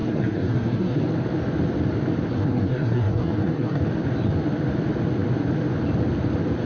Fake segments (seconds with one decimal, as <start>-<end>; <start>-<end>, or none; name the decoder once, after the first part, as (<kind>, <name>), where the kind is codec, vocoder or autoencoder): 0.0-1.0 (codec, SNAC); 2.3-3.8